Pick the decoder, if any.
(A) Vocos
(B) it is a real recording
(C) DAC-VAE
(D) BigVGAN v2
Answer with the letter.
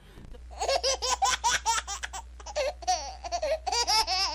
B